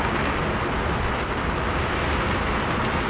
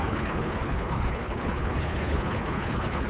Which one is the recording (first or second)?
first